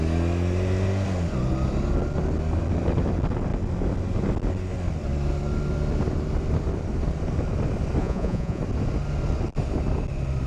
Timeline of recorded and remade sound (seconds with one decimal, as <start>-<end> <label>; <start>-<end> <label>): 0.0-8.0 recorded; 8.0-8.6 remade; 8.6-10.5 recorded